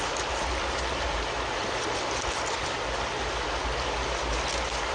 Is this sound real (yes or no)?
yes